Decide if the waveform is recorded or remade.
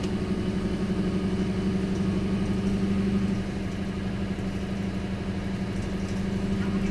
recorded